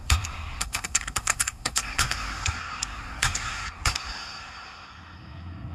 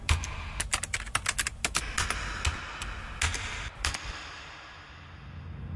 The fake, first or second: first